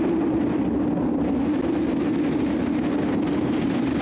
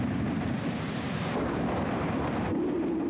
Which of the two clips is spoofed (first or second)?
second